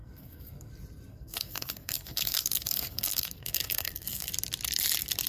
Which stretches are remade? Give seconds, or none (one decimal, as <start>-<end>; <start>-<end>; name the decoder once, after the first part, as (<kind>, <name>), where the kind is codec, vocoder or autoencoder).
0.0-0.7 (codec, SNAC); 1.1-4.3